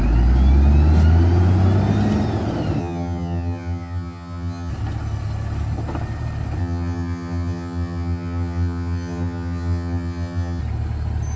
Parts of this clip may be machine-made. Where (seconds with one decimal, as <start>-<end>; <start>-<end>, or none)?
2.8-4.7; 6.6-10.6